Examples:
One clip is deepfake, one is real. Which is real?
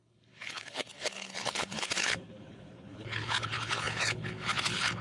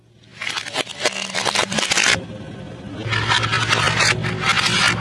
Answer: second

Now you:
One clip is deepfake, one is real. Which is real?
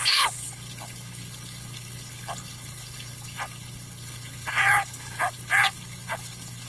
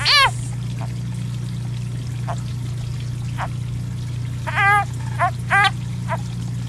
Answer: second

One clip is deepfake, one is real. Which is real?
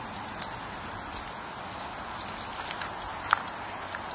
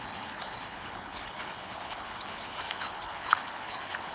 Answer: first